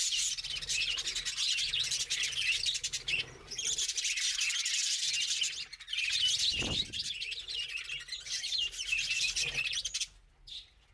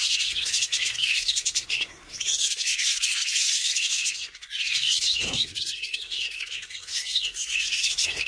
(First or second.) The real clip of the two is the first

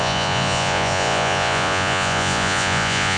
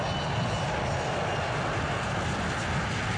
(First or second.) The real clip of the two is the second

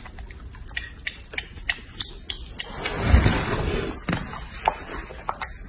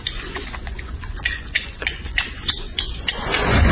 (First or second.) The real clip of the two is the first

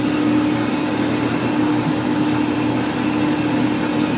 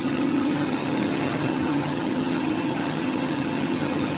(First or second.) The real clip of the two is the first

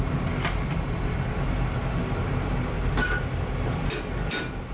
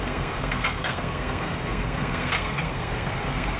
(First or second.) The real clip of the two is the first